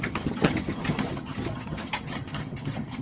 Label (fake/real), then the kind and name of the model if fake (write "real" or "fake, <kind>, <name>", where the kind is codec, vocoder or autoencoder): fake, vocoder, HiFi-GAN